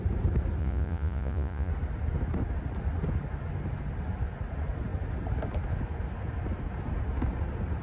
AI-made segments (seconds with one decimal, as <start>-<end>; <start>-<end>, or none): 0.6-1.7